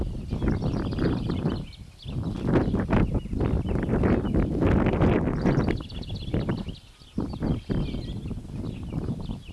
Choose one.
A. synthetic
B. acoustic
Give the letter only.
B